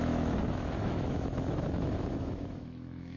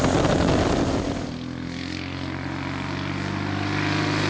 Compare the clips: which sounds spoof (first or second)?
first